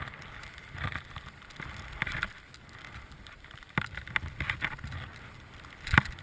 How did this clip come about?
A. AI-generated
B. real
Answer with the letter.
B